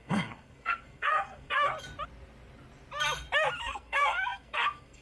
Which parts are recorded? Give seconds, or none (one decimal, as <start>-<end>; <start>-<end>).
1.7-3.6

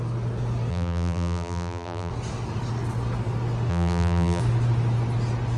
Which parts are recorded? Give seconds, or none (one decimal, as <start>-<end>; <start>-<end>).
0.0-0.7; 2.1-3.7; 4.4-5.6